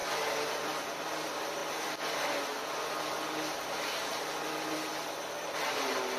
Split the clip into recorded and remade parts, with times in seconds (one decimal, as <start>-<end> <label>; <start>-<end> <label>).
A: 0.0-6.2 recorded

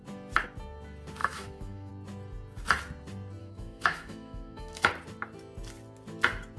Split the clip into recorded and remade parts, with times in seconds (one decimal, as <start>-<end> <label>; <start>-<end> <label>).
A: 0.0-1.2 recorded; 1.2-1.9 remade; 1.9-3.4 recorded; 3.4-4.9 remade; 4.9-6.6 recorded

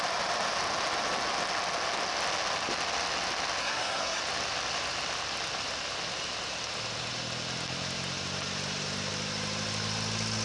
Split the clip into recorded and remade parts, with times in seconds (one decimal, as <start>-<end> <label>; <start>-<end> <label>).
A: 0.0-3.6 recorded; 3.6-4.2 remade; 4.2-10.4 recorded

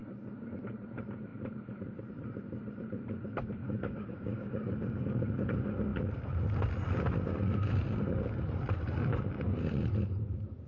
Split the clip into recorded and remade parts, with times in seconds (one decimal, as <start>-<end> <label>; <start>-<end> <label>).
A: 0.0-3.6 recorded; 3.6-4.7 remade; 4.7-10.7 recorded

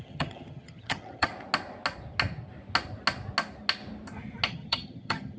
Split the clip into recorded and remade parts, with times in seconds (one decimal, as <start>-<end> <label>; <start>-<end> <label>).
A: 0.0-1.3 remade; 1.3-4.5 recorded; 4.5-5.4 remade

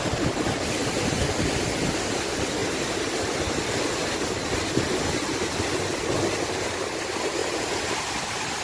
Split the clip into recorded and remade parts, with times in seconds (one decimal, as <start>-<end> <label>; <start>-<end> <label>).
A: 0.0-0.8 recorded; 0.8-1.5 remade; 1.5-8.6 recorded

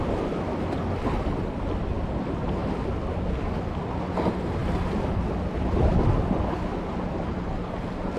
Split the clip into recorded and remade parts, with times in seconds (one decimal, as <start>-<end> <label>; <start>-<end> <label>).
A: 0.0-8.2 recorded

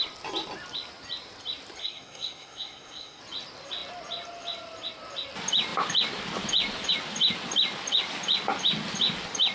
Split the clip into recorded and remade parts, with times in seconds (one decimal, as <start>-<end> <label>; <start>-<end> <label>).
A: 0.0-1.8 recorded; 1.8-3.2 remade; 3.2-9.5 recorded